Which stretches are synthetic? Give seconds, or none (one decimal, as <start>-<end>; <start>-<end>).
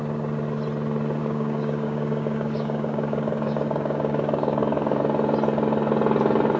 1.2-5.0